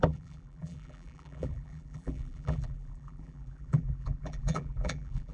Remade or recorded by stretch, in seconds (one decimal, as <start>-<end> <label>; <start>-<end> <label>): 0.0-5.3 remade